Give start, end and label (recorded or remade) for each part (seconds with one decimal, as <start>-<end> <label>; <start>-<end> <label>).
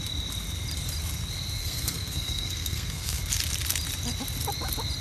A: 0.0-1.6 recorded; 1.6-3.2 remade; 3.2-5.0 recorded